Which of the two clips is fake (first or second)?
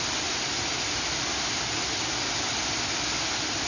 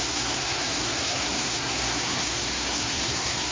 second